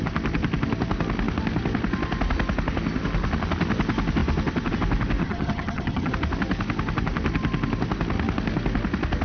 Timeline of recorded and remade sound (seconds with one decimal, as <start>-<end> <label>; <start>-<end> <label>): 0.0-5.2 recorded; 5.2-6.1 remade; 6.1-9.2 recorded